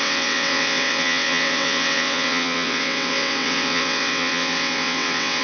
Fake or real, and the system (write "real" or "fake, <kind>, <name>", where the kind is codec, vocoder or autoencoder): fake, vocoder, WaveNeXt